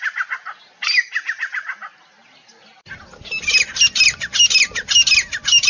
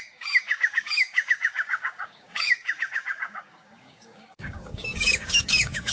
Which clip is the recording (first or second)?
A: first